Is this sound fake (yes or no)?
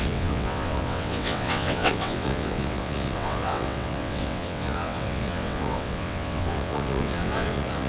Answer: yes